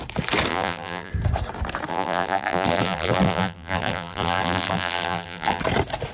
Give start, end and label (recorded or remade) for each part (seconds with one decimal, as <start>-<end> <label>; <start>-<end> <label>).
0.0-0.5 recorded; 0.5-1.1 remade; 1.1-1.9 recorded; 1.9-5.6 remade; 5.6-6.1 recorded